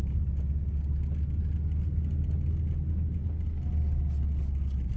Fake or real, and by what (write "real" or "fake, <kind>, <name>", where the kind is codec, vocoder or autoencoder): real